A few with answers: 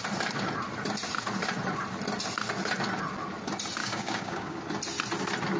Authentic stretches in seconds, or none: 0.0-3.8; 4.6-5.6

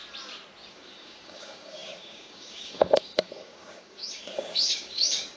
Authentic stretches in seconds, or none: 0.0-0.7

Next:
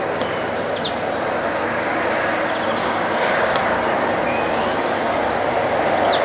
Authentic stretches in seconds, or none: 0.0-2.8; 3.6-4.6; 5.2-6.2

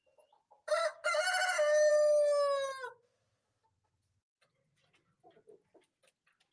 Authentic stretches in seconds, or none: 0.0-6.5